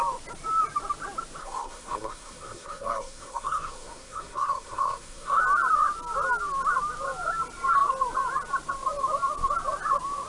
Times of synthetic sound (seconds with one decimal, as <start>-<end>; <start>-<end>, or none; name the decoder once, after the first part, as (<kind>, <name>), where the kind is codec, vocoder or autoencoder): 1.4-5.4 (codec, SNAC)